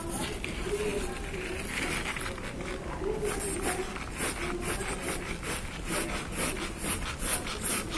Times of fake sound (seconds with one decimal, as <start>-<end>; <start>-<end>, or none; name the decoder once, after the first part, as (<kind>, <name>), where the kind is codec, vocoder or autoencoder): none